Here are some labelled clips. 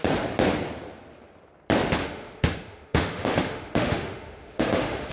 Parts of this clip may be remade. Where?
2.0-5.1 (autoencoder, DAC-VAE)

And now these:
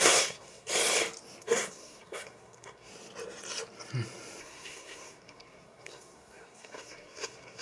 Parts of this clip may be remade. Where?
0.0-0.7 (codec, SNAC); 1.4-2.9; 4.4-7.6

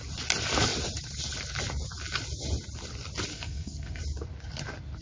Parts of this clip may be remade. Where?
3.3-4.0 (codec, SNAC)

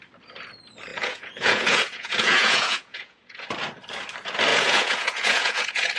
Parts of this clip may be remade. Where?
0.9-3.5 (vocoder, Vocos); 4.5-6.0